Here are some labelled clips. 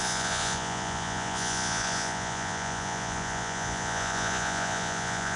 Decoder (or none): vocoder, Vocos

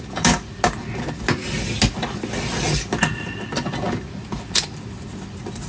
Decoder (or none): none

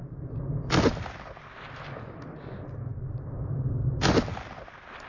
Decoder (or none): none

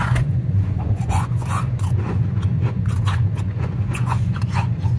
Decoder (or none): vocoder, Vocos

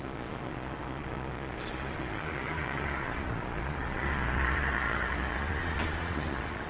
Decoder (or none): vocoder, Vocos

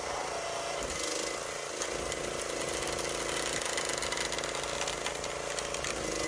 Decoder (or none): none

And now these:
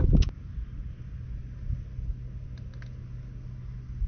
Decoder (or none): none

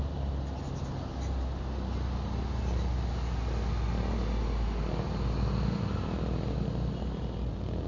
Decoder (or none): none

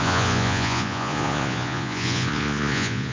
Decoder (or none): vocoder, Vocos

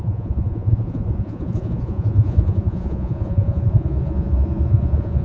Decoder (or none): vocoder, Vocos